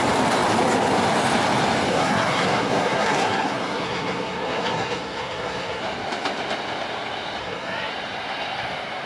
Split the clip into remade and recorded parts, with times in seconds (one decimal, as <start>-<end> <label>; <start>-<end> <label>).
0.0-1.9 recorded; 1.9-5.8 remade; 5.8-7.4 recorded; 7.4-7.9 remade; 7.9-9.1 recorded